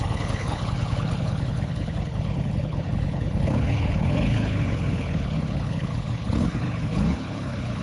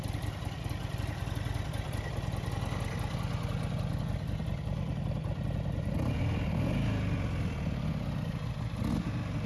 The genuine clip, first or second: second